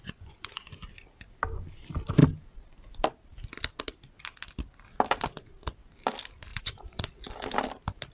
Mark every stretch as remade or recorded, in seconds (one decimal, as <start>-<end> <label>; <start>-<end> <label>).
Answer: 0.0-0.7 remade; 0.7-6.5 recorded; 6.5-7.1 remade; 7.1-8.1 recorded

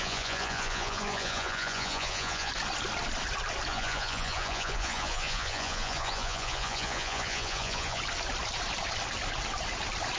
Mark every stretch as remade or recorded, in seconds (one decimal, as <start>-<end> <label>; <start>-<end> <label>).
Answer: 0.0-2.5 remade; 2.5-3.7 recorded; 3.7-8.0 remade; 8.0-10.2 recorded

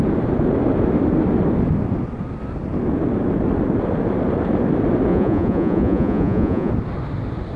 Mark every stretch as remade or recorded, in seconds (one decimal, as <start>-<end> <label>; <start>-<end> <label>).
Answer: 0.0-5.1 recorded; 5.1-6.7 remade; 6.7-7.6 recorded

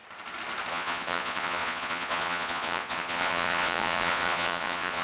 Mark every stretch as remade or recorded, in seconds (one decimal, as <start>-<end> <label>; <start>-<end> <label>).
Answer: 0.0-0.7 recorded; 0.7-5.0 remade

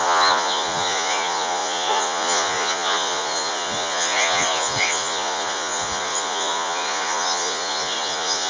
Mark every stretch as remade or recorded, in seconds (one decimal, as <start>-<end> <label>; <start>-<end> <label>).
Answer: 0.0-8.5 remade

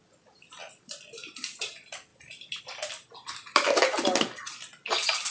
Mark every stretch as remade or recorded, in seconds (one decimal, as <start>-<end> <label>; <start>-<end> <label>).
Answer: 0.0-5.3 recorded